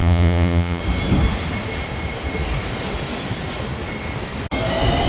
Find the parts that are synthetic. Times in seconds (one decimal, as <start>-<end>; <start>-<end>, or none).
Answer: 0.0-0.8